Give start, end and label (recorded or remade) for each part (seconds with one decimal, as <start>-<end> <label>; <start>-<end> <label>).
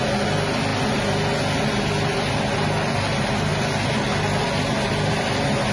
0.0-5.7 recorded